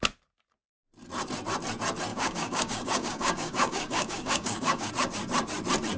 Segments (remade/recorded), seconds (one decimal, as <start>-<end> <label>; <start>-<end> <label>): 0.0-2.1 recorded; 2.1-4.9 remade; 4.9-6.0 recorded